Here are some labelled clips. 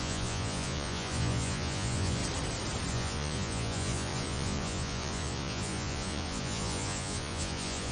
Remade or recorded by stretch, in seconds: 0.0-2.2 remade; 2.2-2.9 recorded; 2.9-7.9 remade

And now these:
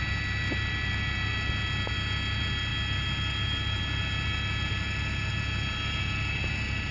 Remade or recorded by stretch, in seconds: 0.0-6.9 recorded